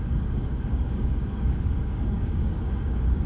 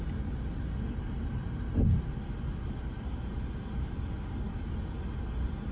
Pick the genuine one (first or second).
second